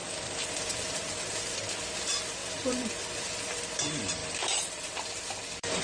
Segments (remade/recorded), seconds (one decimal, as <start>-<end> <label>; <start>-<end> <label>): 0.0-5.8 remade